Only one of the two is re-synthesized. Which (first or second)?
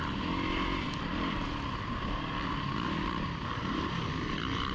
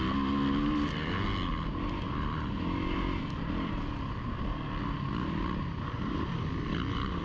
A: first